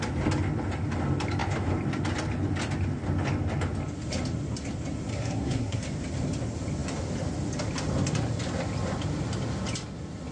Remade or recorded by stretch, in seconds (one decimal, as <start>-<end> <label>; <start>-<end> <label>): 0.0-5.1 recorded; 5.1-5.8 remade; 5.8-10.3 recorded